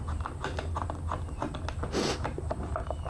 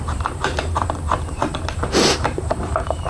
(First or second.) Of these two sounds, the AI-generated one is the second